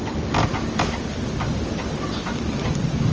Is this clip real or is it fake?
real